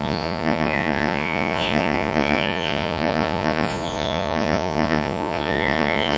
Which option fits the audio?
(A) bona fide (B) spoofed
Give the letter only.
B